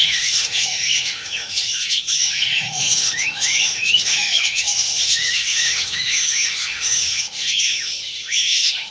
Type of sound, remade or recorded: remade